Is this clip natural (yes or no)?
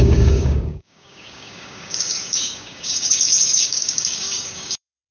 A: no